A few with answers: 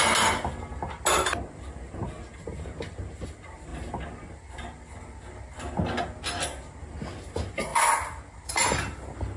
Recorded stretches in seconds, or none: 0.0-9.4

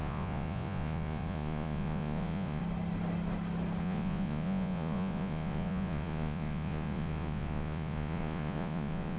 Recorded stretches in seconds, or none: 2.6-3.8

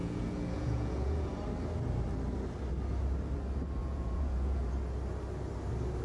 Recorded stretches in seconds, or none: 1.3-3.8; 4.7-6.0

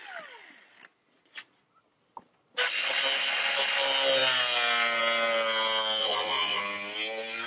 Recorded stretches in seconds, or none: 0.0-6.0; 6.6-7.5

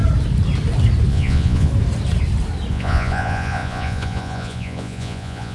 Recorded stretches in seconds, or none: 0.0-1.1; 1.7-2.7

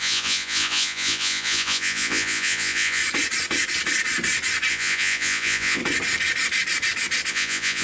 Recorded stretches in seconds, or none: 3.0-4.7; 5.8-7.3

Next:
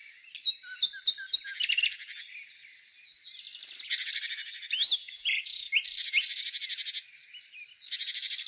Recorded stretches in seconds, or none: 0.0-5.0; 5.7-8.5

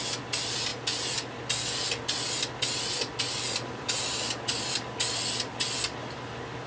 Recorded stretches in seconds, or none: 0.0-6.7